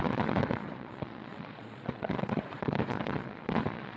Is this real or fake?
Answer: fake